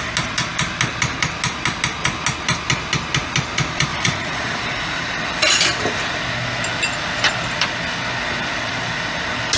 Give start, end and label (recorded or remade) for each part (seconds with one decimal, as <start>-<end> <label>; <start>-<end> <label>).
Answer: 0.0-3.9 recorded; 3.9-5.0 remade; 5.0-9.6 recorded